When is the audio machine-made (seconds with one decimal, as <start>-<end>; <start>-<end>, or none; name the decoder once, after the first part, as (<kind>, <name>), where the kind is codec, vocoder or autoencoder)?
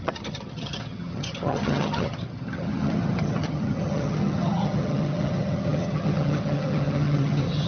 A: 0.0-7.7 (vocoder, HiFi-GAN)